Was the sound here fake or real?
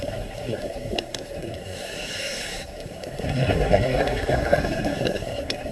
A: fake